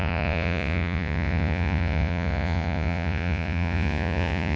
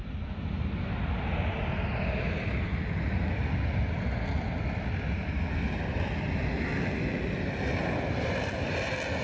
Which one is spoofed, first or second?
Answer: first